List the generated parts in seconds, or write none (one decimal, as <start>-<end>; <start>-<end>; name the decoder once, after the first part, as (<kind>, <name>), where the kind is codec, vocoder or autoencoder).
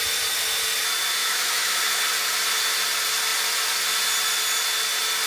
1.2-1.8 (autoencoder, DAC-VAE)